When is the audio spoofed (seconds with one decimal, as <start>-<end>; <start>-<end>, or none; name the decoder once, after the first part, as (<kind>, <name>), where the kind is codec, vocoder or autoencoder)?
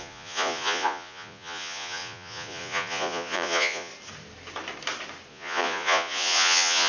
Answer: 0.0-3.9 (vocoder, Vocos); 5.3-6.9